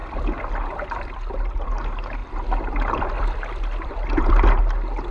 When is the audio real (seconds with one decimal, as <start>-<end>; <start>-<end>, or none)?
1.1-2.2; 4.6-5.1